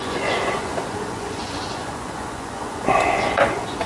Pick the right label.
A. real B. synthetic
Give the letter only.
B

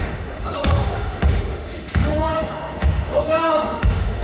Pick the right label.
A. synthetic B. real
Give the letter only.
A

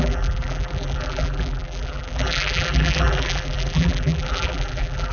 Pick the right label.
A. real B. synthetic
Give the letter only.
B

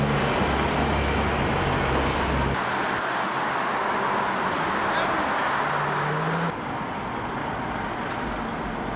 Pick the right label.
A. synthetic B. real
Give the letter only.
B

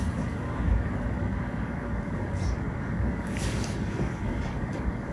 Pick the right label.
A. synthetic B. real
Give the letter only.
A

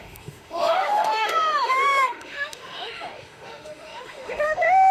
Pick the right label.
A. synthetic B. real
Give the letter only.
A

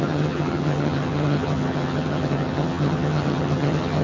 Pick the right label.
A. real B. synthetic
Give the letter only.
B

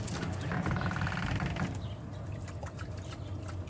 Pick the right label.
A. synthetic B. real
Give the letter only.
B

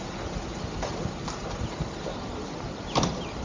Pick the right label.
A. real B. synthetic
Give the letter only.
A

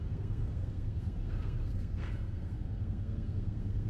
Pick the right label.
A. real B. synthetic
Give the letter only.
B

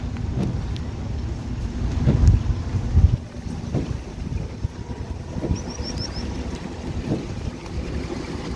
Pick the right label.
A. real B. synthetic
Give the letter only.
B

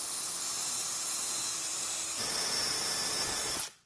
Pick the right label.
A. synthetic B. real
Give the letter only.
A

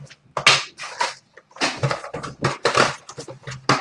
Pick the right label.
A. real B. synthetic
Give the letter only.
A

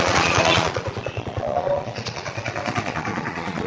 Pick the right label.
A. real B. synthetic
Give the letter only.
B